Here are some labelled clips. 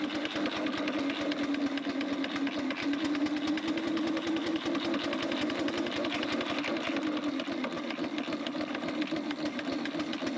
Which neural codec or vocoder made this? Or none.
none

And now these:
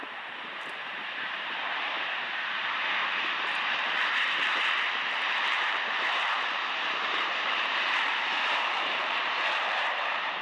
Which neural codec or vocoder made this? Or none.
vocoder, BigVGAN v2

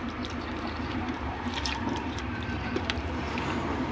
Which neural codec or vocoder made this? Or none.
vocoder, BigVGAN v2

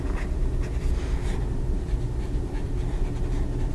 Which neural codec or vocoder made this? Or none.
vocoder, BigVGAN v2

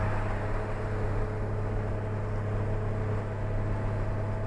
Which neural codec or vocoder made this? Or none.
none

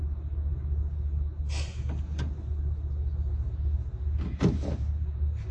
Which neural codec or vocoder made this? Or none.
none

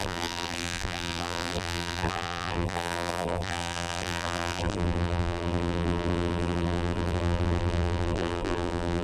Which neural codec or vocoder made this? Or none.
vocoder, BigVGAN v2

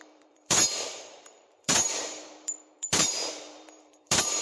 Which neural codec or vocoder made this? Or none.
vocoder, BigVGAN v2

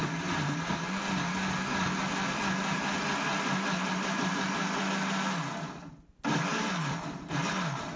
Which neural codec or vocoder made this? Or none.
none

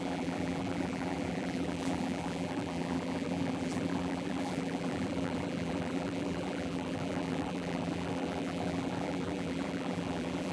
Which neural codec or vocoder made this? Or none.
vocoder, BigVGAN v2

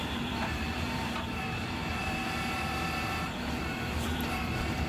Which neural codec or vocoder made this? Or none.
vocoder, BigVGAN v2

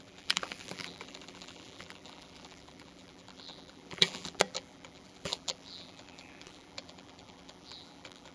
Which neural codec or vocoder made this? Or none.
vocoder, BigVGAN v2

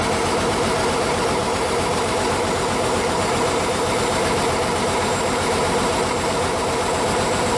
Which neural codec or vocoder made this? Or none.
vocoder, BigVGAN v2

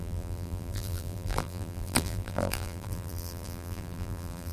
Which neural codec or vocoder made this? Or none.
vocoder, BigVGAN v2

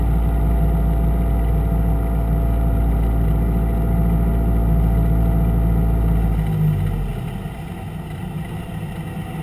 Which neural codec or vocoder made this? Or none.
none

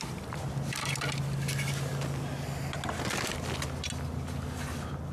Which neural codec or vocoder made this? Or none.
none